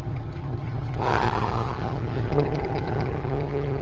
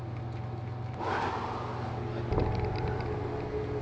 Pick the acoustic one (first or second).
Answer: second